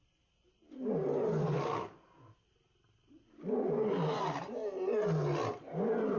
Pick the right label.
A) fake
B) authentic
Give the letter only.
B